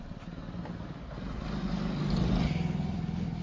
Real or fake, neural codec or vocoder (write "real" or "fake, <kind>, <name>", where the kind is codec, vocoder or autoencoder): real